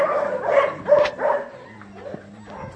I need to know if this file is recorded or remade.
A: recorded